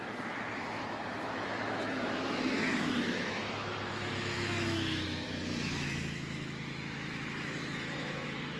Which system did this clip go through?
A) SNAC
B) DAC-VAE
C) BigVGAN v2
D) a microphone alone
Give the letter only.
B